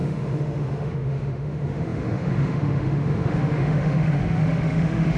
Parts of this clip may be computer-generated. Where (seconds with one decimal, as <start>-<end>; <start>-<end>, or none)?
0.0-5.2